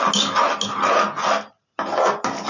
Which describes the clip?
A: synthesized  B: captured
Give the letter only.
B